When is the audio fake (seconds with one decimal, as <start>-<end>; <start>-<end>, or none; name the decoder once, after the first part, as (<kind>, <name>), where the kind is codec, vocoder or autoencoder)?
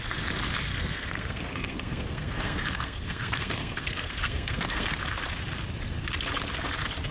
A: 0.7-5.0 (codec, SNAC)